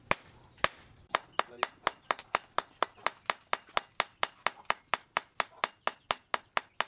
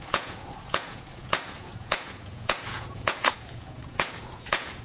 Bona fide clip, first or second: first